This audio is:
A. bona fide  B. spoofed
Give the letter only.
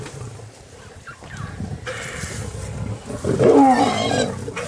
A